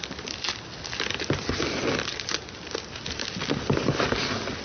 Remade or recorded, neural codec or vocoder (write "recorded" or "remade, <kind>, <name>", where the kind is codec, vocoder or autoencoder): recorded